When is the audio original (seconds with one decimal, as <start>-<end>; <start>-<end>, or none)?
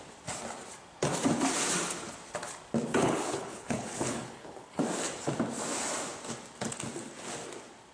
0.0-2.9; 4.8-7.9